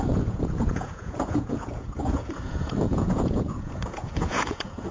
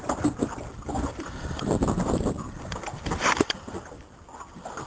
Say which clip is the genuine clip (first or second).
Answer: second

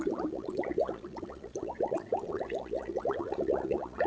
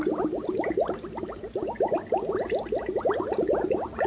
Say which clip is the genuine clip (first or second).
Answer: second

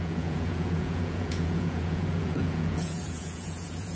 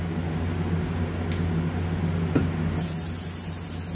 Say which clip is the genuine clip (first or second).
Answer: second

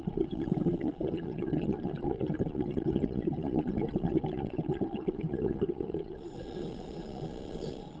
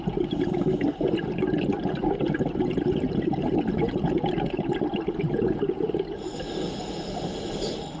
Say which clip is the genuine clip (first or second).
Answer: second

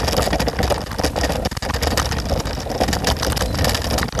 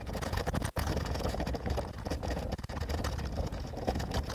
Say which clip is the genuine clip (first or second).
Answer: first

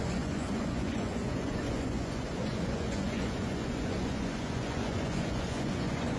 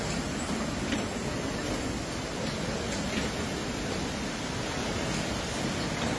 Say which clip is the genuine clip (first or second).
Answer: second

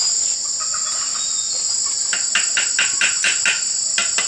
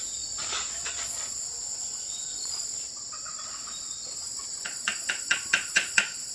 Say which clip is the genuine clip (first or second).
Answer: first